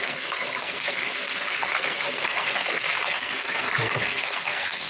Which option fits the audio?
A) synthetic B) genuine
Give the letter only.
A